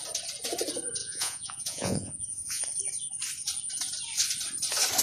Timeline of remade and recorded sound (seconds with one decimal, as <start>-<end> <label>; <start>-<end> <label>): 0.0-1.0 recorded; 1.0-2.6 remade; 2.6-5.0 recorded